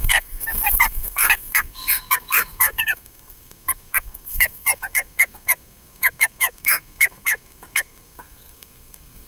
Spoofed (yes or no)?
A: yes